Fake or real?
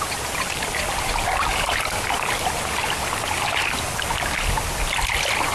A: real